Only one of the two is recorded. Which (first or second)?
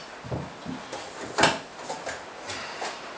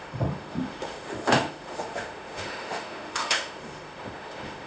first